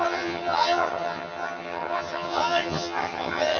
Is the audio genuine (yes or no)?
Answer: no